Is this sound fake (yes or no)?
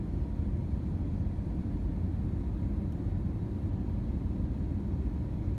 no